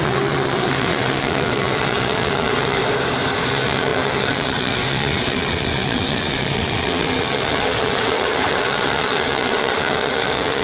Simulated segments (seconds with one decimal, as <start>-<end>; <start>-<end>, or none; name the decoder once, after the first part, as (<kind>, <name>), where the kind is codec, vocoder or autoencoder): 0.0-2.8 (vocoder, WaveNeXt); 3.5-10.6